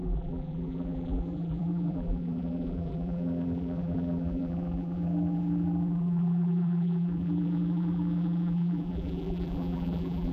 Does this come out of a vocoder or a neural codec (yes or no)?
yes